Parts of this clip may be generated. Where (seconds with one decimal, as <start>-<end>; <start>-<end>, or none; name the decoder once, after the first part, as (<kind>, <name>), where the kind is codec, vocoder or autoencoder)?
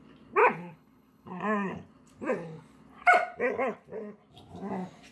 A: 0.4-1.4 (codec, HILCodec)